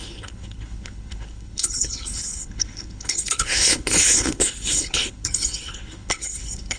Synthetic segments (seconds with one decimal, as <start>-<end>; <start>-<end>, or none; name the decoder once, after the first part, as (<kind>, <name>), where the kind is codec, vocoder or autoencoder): 0.0-6.8 (codec, HILCodec)